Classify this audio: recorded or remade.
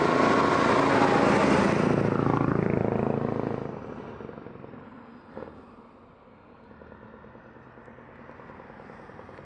recorded